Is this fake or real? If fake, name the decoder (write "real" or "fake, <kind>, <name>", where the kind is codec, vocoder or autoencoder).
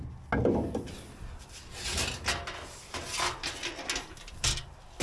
real